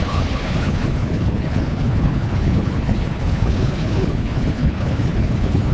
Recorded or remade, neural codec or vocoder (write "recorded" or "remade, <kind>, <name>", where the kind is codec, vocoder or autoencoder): remade, codec, HILCodec